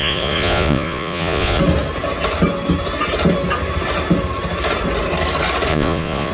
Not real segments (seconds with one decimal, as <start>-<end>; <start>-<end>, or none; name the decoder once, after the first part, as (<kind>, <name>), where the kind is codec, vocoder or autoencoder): 0.0-1.6 (vocoder, Vocos); 5.7-6.3

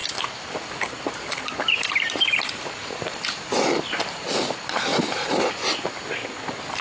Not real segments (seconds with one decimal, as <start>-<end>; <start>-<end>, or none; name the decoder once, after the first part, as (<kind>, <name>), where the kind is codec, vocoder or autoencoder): none

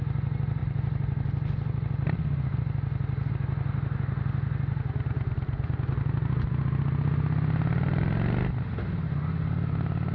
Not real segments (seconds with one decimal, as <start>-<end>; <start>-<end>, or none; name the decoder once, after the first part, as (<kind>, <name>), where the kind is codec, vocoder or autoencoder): none

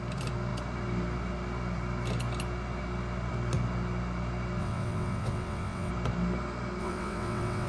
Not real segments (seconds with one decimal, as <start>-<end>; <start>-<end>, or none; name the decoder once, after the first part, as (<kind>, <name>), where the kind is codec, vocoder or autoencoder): 4.6-5.9 (vocoder, WaveNeXt); 6.8-7.7

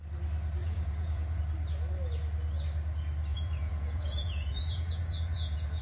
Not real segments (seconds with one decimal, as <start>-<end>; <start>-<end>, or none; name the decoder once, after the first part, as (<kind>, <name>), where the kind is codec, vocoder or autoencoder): 0.6-1.4 (vocoder, Vocos); 3.3-5.8

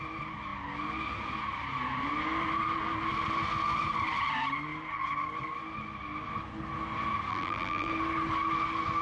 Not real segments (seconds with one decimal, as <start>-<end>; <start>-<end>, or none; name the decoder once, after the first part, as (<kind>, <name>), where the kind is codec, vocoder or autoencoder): 7.3-7.9 (vocoder, BigVGAN v2)